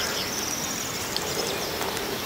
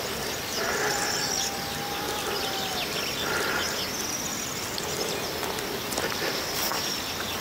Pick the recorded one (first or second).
second